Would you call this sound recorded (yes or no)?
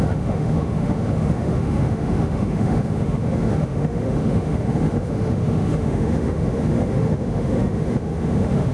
no